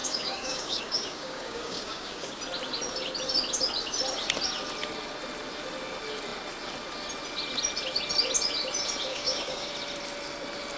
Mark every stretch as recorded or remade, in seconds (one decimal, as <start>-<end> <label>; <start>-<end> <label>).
0.0-2.4 remade; 2.4-9.1 recorded; 9.1-9.7 remade; 9.7-10.8 recorded